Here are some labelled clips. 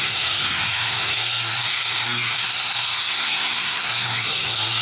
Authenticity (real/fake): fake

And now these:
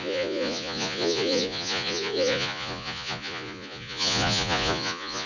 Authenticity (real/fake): fake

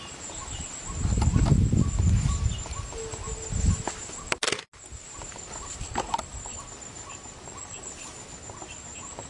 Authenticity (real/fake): real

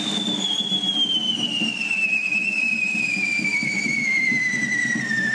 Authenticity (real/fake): real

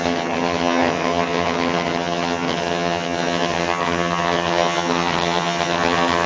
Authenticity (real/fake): fake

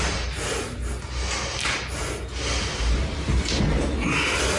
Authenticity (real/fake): real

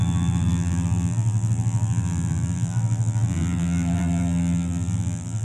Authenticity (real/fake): fake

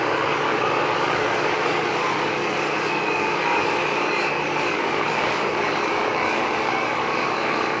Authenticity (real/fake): fake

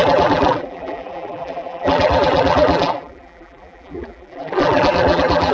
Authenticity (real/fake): fake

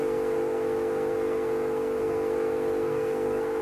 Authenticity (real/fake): fake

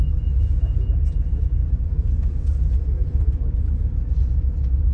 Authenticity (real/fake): real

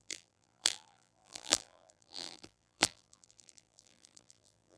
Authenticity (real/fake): fake